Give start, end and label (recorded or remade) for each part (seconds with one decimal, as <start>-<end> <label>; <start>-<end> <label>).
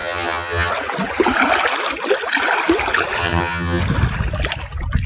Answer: 0.0-0.7 remade; 0.7-3.2 recorded; 3.2-3.8 remade; 3.8-5.1 recorded